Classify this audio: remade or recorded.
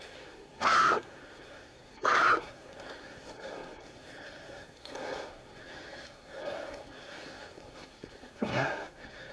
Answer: remade